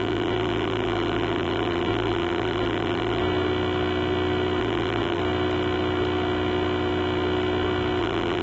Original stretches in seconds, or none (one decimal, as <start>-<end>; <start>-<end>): 3.2-4.6; 5.2-8.0

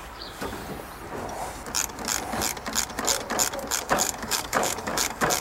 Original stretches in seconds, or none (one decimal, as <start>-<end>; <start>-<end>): 0.6-3.8

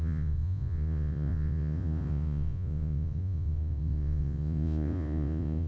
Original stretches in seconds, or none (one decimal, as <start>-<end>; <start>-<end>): none